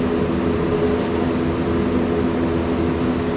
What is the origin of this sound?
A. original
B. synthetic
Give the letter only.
A